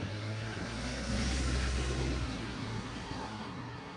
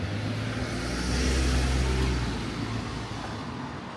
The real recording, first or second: second